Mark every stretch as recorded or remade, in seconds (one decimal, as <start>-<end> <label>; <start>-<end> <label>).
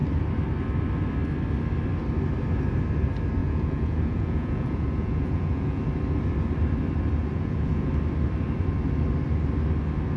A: 0.0-3.4 recorded; 3.4-5.8 remade; 5.8-7.2 recorded; 7.2-7.9 remade; 7.9-10.2 recorded